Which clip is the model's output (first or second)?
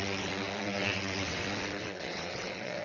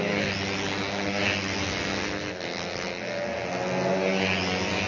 first